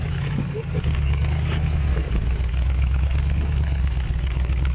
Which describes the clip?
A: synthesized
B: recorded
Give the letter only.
A